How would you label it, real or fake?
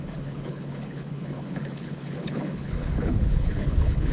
fake